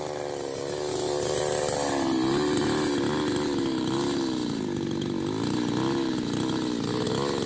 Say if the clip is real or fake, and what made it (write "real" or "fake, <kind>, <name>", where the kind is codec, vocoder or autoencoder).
real